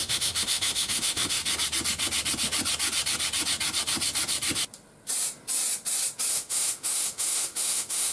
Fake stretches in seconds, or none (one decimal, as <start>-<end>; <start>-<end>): 0.0-1.4; 6.3-8.1